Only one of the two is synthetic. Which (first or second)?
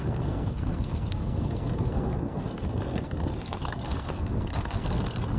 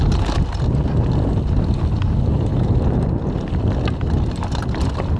first